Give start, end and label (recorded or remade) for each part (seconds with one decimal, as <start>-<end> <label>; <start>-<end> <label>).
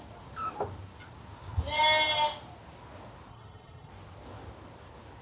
0.0-3.3 recorded; 3.3-3.9 remade; 3.9-5.2 recorded